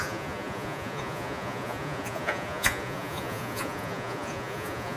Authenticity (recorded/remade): remade